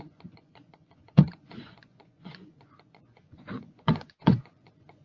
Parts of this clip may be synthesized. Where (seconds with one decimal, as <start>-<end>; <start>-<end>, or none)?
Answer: 0.0-5.0